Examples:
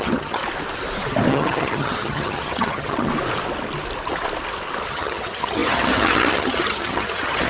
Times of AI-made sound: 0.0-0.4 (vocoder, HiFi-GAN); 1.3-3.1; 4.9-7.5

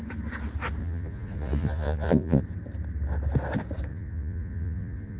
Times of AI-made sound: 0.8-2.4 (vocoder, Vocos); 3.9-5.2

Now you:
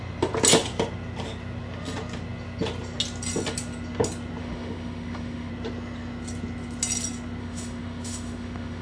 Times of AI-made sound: 4.4-5.5 (autoencoder, DAC-VAE); 7.4-8.8